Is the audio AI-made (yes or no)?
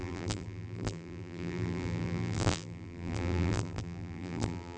yes